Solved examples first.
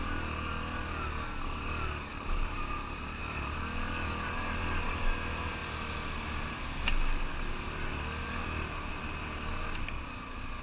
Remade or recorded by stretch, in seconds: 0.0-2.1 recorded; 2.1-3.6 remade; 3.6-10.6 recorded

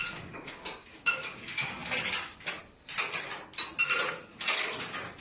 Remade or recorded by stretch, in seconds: 0.0-1.8 remade; 1.8-5.2 recorded

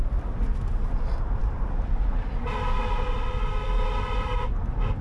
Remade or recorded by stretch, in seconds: 0.0-5.0 recorded

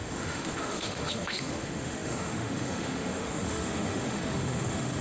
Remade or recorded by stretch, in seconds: 0.0-5.0 remade

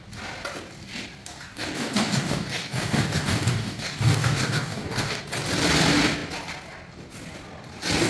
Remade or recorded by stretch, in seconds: 0.0-1.2 recorded; 1.2-5.2 remade; 5.2-8.1 recorded

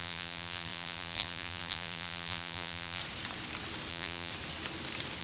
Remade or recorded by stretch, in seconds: 0.0-3.0 remade; 3.0-3.9 recorded; 3.9-4.3 remade; 4.3-5.2 recorded

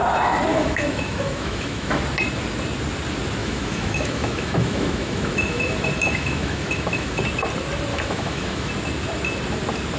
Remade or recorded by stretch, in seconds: 0.0-0.5 recorded; 0.5-2.0 remade; 2.0-3.4 recorded; 3.4-7.2 remade; 7.2-7.9 recorded; 7.9-8.7 remade; 8.7-10.0 recorded